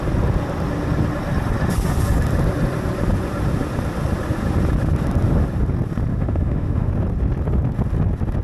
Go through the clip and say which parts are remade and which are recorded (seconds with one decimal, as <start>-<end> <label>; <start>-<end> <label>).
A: 0.0-6.1 recorded; 6.1-6.9 remade; 6.9-8.4 recorded

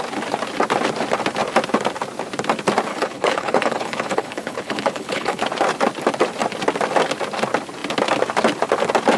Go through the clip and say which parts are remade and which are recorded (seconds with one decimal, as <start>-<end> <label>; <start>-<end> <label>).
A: 0.0-2.9 recorded; 2.9-5.4 remade; 5.4-9.2 recorded